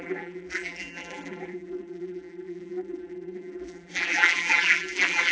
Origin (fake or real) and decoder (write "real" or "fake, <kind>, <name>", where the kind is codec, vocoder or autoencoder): fake, vocoder, BigVGAN v2